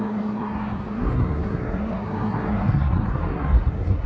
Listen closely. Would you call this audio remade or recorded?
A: remade